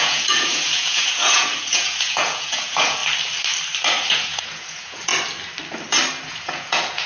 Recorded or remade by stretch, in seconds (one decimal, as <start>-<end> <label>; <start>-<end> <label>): 0.0-3.0 remade; 3.0-4.1 recorded; 4.1-5.1 remade; 5.1-6.3 recorded; 6.3-7.1 remade